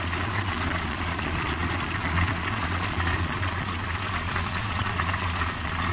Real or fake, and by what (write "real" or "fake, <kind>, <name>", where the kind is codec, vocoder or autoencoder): fake, vocoder, Vocos